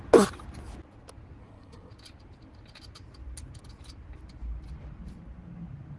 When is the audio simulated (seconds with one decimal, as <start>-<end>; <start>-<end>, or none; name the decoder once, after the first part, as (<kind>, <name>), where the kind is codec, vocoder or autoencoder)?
1.4-1.9 (codec, SNAC)